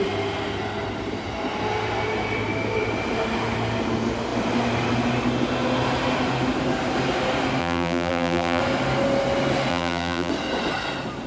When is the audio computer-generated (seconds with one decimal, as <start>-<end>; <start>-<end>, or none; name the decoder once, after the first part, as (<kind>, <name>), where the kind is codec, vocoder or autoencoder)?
7.6-8.6 (vocoder, BigVGAN v2); 9.7-10.3